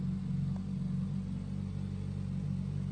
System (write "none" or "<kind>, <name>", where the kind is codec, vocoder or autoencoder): none